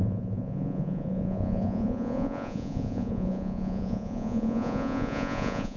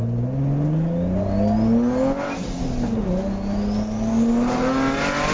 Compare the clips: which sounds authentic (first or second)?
second